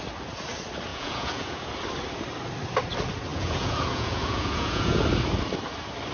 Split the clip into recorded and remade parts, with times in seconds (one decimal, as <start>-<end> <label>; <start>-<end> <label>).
0.0-0.9 recorded; 0.9-1.7 remade; 1.7-3.3 recorded; 3.3-5.0 remade; 5.0-6.1 recorded